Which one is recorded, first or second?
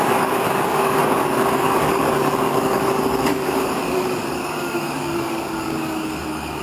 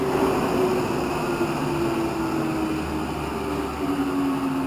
second